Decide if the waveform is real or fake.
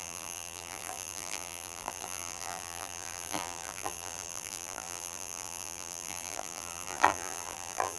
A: fake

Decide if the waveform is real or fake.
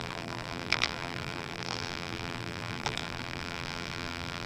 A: fake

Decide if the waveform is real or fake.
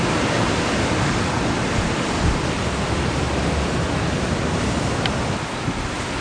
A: fake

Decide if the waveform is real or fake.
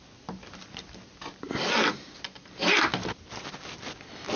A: real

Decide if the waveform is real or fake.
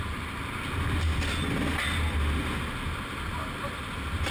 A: real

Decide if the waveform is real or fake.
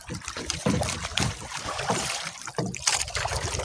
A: fake